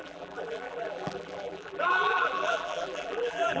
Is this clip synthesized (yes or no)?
yes